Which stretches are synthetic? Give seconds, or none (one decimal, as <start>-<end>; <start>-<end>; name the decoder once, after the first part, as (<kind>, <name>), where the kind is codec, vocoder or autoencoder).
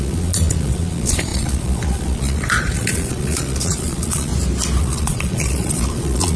0.0-4.3 (vocoder, Vocos); 4.8-6.4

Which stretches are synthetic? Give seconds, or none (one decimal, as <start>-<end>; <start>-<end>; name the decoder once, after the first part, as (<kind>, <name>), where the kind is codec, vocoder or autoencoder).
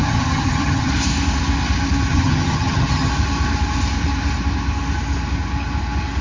0.0-0.9 (vocoder, HiFi-GAN); 2.1-3.1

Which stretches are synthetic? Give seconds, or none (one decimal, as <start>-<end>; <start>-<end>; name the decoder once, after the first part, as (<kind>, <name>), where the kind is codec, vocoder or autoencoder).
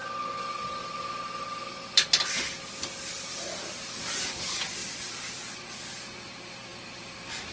1.4-1.8 (vocoder, BigVGAN v2); 3.1-7.5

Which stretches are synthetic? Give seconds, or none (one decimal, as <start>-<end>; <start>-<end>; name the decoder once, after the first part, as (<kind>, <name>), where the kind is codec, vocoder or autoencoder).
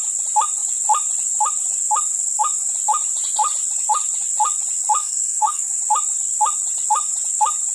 5.0-5.7 (codec, SNAC)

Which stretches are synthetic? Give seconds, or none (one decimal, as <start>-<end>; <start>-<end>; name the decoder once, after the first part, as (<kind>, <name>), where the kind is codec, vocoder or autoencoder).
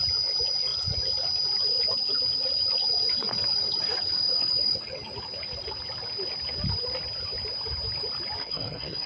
8.4-9.1 (codec, SNAC)